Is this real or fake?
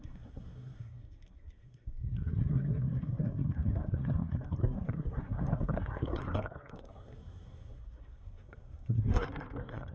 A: fake